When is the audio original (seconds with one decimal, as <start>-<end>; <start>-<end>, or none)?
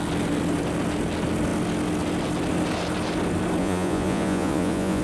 0.0-3.6